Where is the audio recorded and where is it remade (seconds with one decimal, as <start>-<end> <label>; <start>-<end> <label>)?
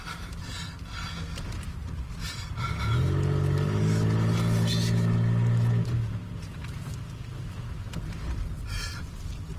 0.0-9.6 recorded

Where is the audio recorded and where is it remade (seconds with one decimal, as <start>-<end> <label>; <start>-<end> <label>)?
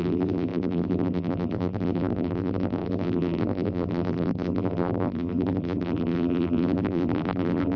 0.0-7.8 remade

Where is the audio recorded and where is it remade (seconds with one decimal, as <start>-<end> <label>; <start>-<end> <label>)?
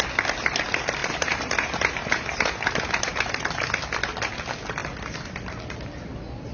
0.0-1.0 recorded; 1.0-3.3 remade; 3.3-6.5 recorded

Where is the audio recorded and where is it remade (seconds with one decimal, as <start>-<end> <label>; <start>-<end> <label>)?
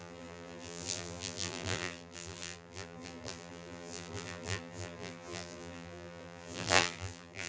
0.0-7.5 remade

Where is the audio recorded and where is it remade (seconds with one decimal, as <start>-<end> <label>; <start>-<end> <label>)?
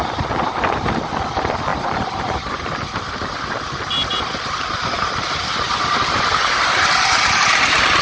0.0-8.0 remade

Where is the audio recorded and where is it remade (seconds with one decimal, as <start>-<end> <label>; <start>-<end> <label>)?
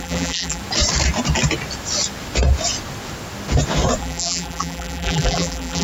0.0-0.6 remade; 0.6-4.0 recorded; 4.0-5.8 remade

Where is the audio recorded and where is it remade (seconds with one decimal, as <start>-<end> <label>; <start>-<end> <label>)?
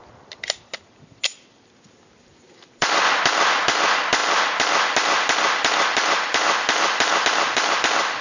0.0-3.6 remade; 3.6-4.2 recorded; 4.2-8.2 remade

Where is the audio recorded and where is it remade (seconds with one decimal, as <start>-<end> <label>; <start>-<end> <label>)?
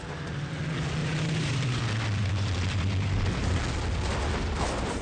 0.0-1.0 recorded; 1.0-1.8 remade; 1.8-2.2 recorded; 2.2-2.8 remade; 2.8-5.0 recorded